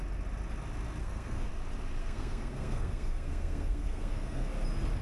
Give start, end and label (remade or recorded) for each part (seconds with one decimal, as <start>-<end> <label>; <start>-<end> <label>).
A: 0.0-1.0 recorded; 1.0-1.5 remade; 1.5-2.0 recorded; 2.0-4.5 remade; 4.5-5.0 recorded